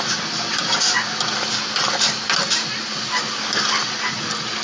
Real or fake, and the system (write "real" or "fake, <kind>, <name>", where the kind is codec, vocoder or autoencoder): real